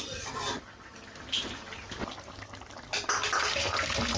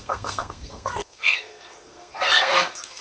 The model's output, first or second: second